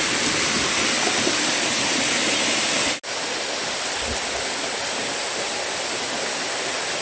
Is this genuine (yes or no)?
yes